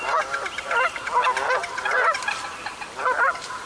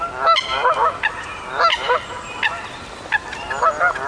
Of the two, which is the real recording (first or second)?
second